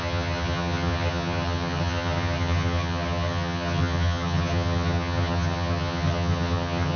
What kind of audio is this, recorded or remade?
remade